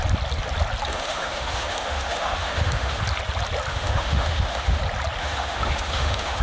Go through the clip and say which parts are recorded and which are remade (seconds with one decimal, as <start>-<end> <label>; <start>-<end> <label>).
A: 0.0-0.9 recorded; 0.9-3.0 remade; 3.0-3.7 recorded; 3.7-4.8 remade; 4.8-5.2 recorded; 5.2-6.4 remade